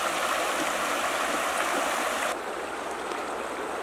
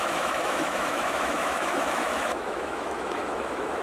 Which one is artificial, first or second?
second